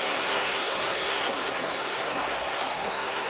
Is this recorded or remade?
remade